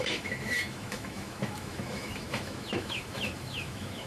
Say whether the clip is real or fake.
fake